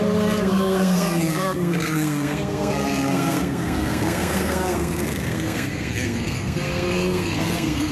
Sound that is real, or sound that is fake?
fake